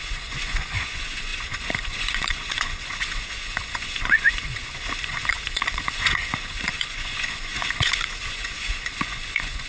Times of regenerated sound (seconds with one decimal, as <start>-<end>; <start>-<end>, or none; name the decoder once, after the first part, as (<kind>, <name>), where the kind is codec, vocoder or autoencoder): 0.0-9.7 (vocoder, Vocos)